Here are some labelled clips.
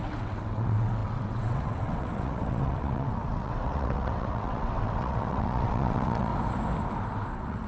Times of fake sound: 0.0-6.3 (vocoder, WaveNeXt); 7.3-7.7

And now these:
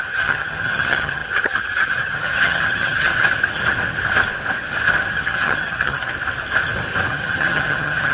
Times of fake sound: 0.0-3.1 (vocoder, HiFi-GAN); 5.1-6.1; 7.1-8.1

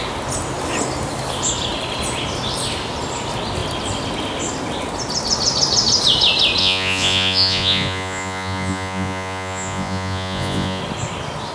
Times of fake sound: 6.6-10.8 (vocoder, Vocos)

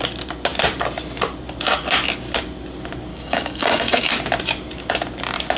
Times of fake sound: 3.1-4.1 (codec, DAC)